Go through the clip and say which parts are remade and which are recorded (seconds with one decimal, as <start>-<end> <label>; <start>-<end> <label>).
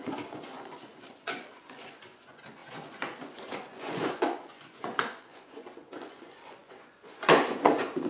0.0-8.1 remade